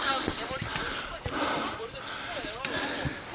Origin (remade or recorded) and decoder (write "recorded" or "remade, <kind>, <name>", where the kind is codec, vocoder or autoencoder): recorded